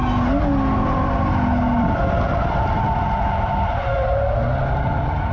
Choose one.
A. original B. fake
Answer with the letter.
A